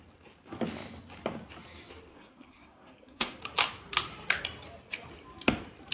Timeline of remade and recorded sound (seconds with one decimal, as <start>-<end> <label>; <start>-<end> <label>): 0.0-2.1 recorded; 2.1-3.4 remade; 3.4-5.9 recorded